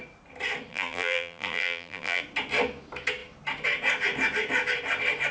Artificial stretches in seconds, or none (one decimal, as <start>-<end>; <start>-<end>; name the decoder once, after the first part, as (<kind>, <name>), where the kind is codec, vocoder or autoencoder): 0.7-2.2 (vocoder, BigVGAN v2)